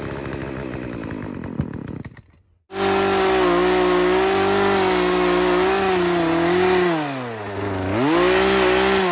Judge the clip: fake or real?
real